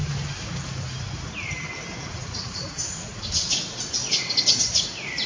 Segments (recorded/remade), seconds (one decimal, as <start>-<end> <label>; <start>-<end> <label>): 0.0-2.1 recorded; 2.1-4.0 remade; 4.0-4.8 recorded; 4.8-5.3 remade